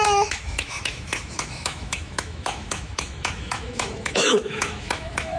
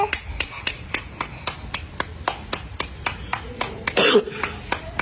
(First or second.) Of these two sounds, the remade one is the first